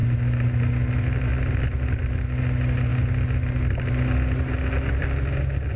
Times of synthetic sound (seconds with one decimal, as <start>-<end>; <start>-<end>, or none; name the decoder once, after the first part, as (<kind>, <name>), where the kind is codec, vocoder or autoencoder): none